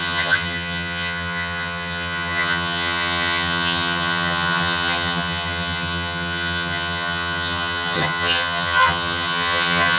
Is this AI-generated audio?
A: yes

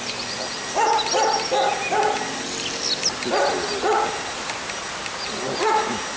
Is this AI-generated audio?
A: no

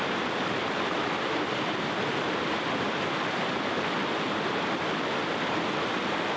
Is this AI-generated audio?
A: no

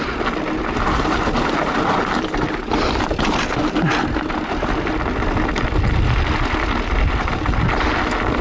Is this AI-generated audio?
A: no